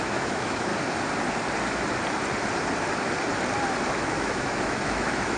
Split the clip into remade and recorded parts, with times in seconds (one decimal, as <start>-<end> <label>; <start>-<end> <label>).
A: 0.0-0.7 remade; 0.7-3.9 recorded; 3.9-5.4 remade